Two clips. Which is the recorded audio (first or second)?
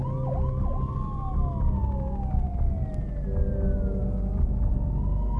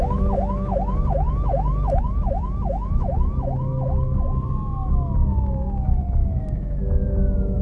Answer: first